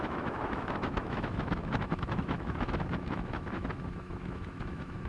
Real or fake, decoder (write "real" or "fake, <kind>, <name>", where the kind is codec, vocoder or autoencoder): fake, autoencoder, DAC-VAE